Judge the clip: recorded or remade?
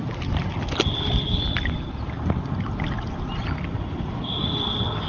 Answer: recorded